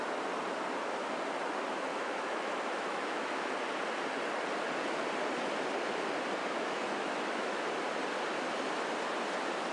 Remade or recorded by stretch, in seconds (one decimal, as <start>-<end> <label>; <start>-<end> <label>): 0.0-1.9 recorded; 1.9-3.5 remade; 3.5-6.4 recorded; 6.4-7.6 remade; 7.6-9.7 recorded